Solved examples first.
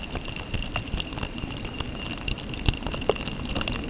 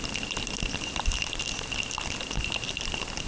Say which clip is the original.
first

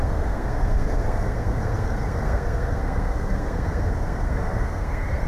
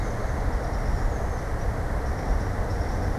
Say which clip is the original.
second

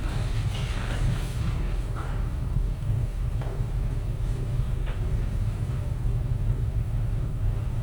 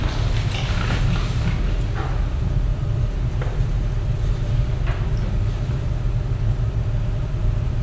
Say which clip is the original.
second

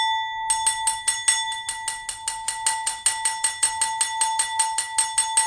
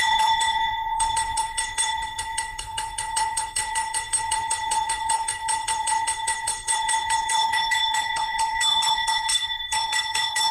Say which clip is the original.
first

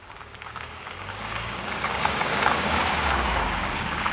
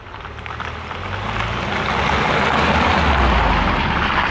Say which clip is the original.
second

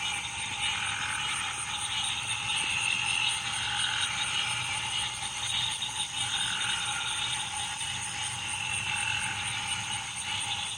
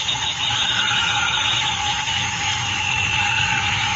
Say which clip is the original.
first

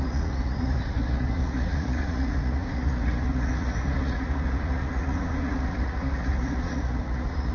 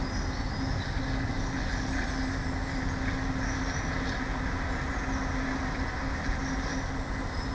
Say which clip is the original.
second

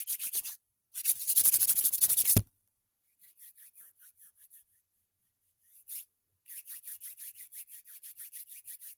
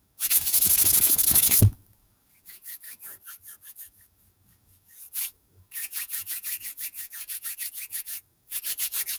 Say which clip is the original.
first